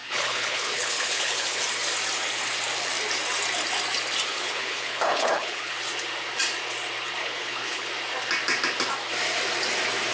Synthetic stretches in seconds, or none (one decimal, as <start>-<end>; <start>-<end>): 0.0-1.6; 4.3-5.7; 7.2-7.9